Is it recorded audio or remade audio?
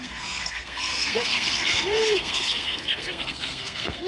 remade